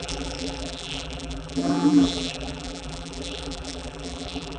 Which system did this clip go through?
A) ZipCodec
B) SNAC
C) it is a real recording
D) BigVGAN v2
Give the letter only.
D